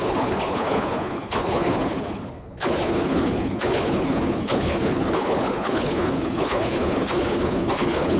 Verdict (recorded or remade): remade